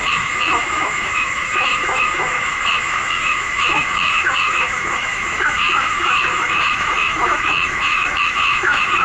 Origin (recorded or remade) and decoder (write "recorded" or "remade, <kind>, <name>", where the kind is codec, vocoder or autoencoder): remade, autoencoder, DAC-VAE